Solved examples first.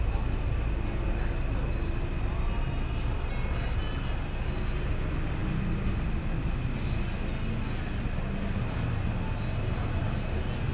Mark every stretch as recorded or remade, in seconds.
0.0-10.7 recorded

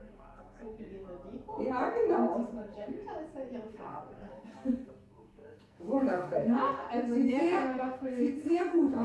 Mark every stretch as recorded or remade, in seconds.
0.0-0.9 remade; 0.9-1.7 recorded; 1.7-3.0 remade; 3.0-3.7 recorded; 3.7-9.0 remade